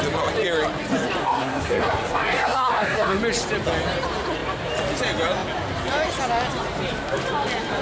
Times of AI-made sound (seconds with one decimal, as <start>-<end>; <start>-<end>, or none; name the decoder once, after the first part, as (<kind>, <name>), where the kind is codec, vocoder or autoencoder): 1.2-3.2 (codec, SNAC)